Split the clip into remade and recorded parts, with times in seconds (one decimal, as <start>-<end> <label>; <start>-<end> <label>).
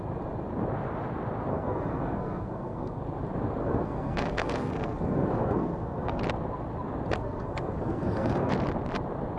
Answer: 0.0-1.5 recorded; 1.5-3.0 remade; 3.0-3.6 recorded; 3.6-6.2 remade; 6.2-7.2 recorded; 7.2-8.5 remade; 8.5-9.4 recorded